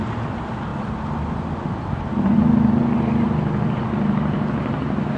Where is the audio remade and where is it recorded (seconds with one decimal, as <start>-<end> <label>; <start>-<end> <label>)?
0.0-5.2 recorded